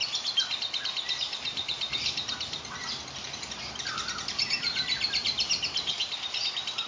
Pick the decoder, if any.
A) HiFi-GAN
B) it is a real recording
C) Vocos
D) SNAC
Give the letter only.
B